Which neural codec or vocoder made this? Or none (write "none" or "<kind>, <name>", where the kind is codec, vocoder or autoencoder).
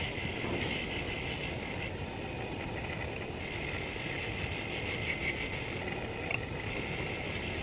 none